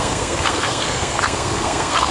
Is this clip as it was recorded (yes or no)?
no